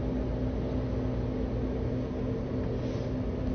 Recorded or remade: recorded